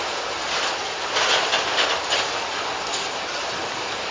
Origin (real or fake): real